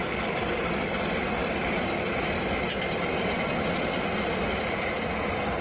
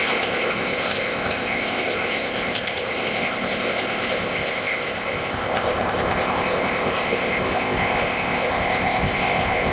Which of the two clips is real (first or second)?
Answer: first